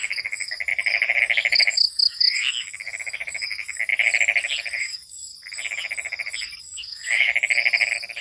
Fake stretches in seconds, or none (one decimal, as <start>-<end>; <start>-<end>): 0.0-0.7; 1.2-3.9; 4.8-5.3; 6.6-7.3